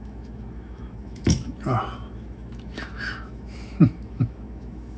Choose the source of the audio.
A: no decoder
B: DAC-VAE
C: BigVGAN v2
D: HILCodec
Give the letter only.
B